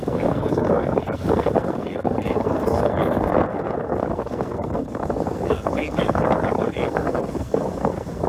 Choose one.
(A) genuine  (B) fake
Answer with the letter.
B